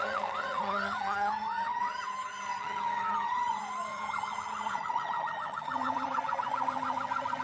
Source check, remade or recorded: remade